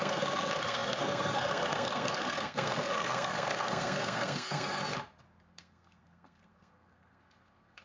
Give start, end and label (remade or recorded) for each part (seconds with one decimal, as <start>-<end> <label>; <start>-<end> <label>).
0.0-4.8 remade; 4.8-5.5 recorded; 5.5-7.8 remade